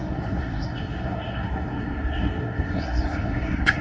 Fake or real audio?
fake